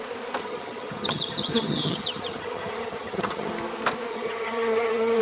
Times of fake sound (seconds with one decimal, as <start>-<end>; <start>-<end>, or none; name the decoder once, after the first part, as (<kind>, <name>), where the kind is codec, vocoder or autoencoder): 0.4-3.5 (vocoder, HiFi-GAN); 4.1-5.2